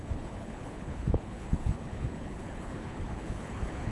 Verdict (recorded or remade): remade